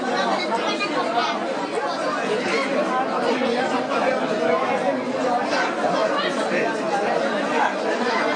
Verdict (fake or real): real